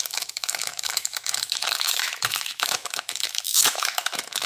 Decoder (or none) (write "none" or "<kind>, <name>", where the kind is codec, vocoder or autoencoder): autoencoder, DAC-VAE